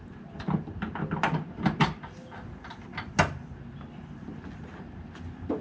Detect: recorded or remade recorded